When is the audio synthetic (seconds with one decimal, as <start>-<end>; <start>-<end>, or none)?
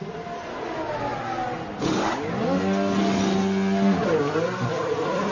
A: none